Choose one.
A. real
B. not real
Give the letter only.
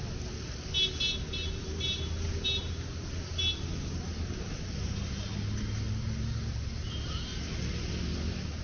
A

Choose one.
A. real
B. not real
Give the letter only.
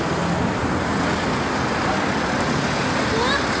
A